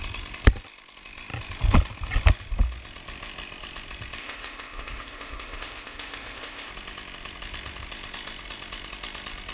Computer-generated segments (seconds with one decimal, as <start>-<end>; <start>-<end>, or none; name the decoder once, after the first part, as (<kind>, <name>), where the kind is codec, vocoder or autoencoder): 4.2-6.7 (codec, ZipCodec)